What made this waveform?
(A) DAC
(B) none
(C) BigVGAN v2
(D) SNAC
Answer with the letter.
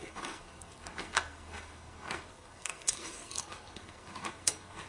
D